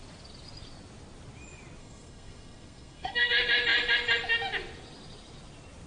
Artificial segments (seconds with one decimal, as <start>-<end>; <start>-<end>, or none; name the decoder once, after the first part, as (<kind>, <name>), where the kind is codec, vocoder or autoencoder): 1.8-3.3 (codec, SNAC)